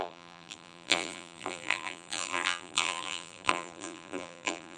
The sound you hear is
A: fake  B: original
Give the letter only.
A